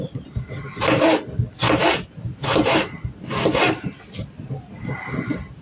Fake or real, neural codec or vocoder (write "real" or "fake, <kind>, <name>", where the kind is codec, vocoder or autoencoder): real